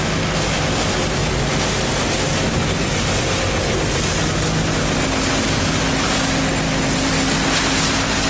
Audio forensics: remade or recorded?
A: recorded